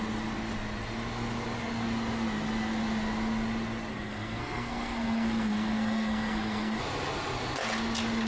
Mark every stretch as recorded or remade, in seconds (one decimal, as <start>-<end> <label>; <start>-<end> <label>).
0.0-3.9 recorded; 3.9-6.8 remade; 6.8-8.3 recorded

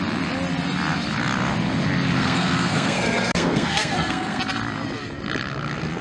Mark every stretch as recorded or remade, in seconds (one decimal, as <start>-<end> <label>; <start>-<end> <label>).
0.0-2.2 recorded; 2.2-4.4 remade; 4.4-6.0 recorded

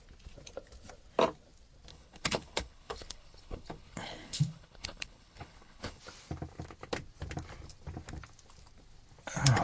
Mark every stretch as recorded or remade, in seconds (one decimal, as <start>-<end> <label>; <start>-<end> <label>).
0.0-1.9 recorded; 1.9-6.0 remade; 6.0-9.6 recorded